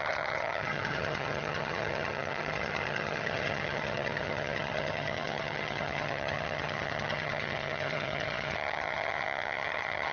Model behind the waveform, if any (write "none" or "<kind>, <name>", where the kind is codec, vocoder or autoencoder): vocoder, HiFi-GAN